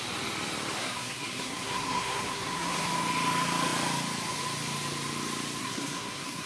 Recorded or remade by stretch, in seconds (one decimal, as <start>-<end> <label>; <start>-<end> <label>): 0.0-0.8 recorded; 0.8-2.9 remade; 2.9-5.6 recorded; 5.6-6.5 remade